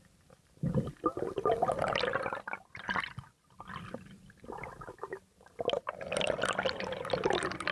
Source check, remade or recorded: recorded